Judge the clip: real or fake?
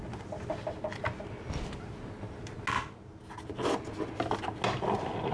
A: real